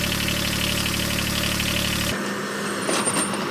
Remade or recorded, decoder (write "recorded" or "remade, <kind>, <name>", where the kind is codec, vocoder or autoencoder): recorded